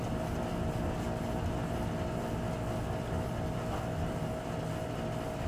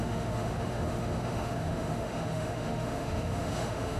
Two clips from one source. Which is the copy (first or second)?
second